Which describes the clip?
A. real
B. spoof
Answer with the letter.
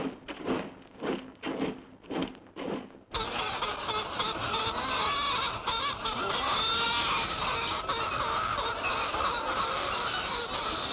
A